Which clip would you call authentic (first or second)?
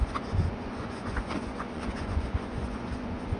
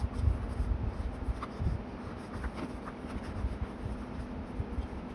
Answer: second